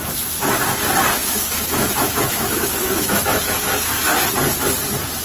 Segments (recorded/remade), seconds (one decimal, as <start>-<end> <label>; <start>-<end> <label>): 0.0-1.2 recorded; 1.2-4.3 remade; 4.3-5.2 recorded